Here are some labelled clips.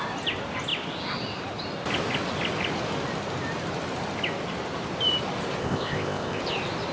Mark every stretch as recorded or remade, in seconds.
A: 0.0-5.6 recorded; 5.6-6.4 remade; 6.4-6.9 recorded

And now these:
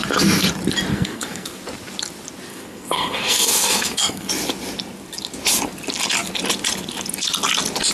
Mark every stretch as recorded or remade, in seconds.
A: 0.0-0.9 recorded; 0.9-1.6 remade; 1.6-2.5 recorded; 2.5-4.3 remade; 4.3-7.9 recorded

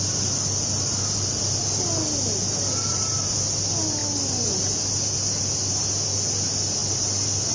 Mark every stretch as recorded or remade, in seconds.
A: 0.0-7.5 recorded

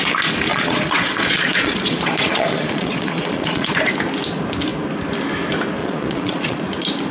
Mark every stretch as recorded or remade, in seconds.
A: 0.0-0.5 recorded; 0.5-3.9 remade; 3.9-5.8 recorded; 5.8-6.6 remade; 6.6-7.1 recorded

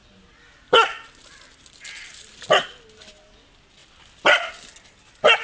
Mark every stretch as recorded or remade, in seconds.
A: 0.0-5.4 recorded

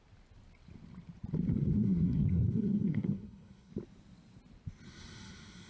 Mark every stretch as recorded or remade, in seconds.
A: 0.0-1.5 recorded; 1.5-3.7 remade; 3.7-5.7 recorded